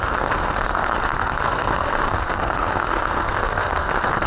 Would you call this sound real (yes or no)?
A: no